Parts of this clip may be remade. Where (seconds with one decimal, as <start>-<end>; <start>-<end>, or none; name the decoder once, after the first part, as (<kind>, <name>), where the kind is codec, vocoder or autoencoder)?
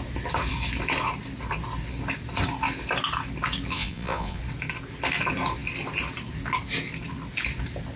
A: 3.7-4.4 (vocoder, Vocos)